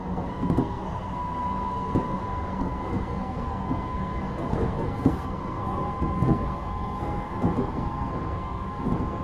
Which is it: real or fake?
fake